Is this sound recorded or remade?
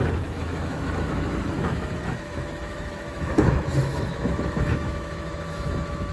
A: remade